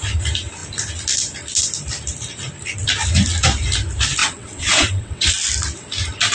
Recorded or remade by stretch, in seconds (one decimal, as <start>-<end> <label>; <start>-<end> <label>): 0.0-4.2 recorded; 4.2-5.3 remade; 5.3-6.3 recorded